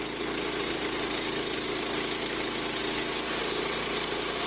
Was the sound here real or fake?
real